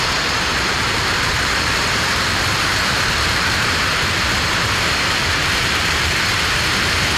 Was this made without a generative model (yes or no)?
no